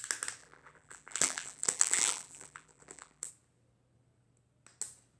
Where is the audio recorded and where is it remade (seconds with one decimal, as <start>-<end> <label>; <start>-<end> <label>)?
0.0-0.4 recorded; 0.4-3.3 remade; 3.3-5.2 recorded